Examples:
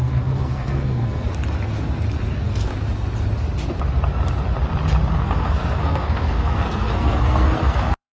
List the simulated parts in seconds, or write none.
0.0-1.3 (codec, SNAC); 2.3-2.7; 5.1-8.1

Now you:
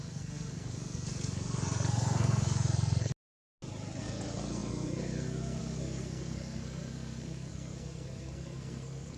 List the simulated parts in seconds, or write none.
0.0-3.1 (codec, SNAC); 4.0-9.2

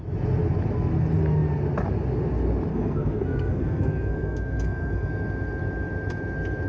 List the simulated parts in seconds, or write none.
2.7-5.1 (codec, SNAC)

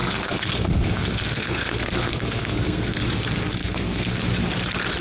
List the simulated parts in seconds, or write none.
0.0-3.0 (codec, SNAC); 3.6-4.2

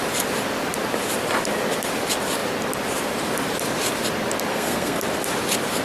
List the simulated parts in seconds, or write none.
4.5-5.0 (codec, SNAC)